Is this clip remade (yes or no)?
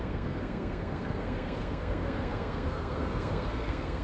yes